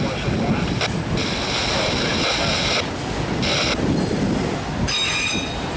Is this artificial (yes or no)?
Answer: no